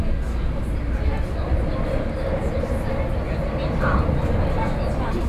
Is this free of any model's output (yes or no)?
yes